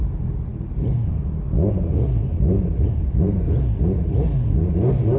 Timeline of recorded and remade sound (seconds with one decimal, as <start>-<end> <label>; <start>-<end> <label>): 0.0-0.5 recorded; 0.5-1.4 remade; 1.4-2.3 recorded; 2.3-3.4 remade; 3.4-5.2 recorded